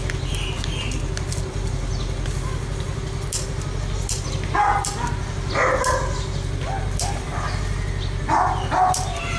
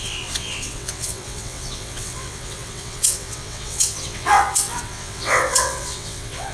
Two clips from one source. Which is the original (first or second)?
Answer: first